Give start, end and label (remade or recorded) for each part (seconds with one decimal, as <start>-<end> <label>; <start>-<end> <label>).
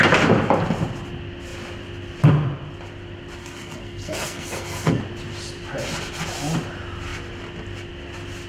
0.0-3.4 recorded; 3.4-5.0 remade; 5.0-8.5 recorded